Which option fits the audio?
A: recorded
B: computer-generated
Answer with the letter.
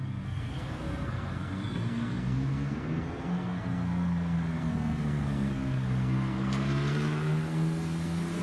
B